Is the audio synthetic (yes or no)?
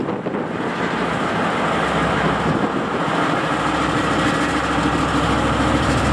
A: no